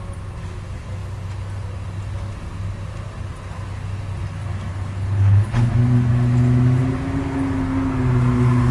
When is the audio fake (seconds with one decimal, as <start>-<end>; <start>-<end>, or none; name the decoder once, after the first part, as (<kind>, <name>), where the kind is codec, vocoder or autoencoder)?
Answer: 4.7-5.7 (codec, HILCodec)

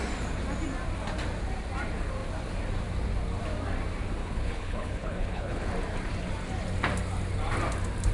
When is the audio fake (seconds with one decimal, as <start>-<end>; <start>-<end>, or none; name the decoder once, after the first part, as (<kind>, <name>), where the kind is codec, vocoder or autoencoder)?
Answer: 4.2-5.7 (codec, HILCodec)

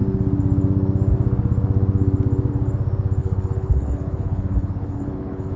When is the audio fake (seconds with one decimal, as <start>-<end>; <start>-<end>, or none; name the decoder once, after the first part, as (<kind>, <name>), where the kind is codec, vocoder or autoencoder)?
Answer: 3.2-5.6 (codec, HILCodec)

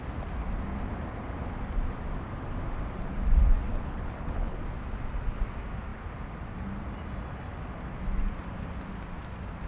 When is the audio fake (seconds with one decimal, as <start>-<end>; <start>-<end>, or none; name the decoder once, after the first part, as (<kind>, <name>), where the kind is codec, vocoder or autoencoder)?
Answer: 3.7-4.6 (codec, HILCodec)

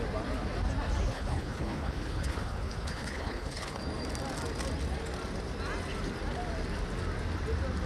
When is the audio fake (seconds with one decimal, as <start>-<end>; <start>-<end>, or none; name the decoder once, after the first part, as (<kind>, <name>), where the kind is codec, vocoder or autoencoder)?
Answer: 1.1-3.8 (codec, HILCodec)

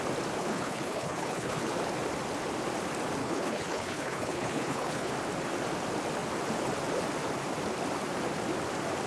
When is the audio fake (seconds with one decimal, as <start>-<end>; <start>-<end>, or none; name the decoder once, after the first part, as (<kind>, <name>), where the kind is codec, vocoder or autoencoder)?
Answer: 0.4-1.7 (codec, HILCodec); 3.2-5.1